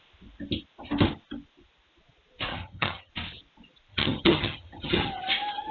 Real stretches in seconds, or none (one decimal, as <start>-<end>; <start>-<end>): 0.0-2.5; 3.1-3.9; 5.1-5.7